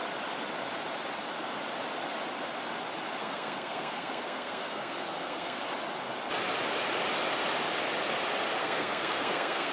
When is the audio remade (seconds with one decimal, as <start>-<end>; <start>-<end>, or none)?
3.2-5.6; 8.6-9.7